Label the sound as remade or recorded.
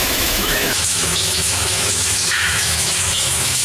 remade